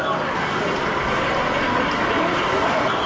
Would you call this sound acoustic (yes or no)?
yes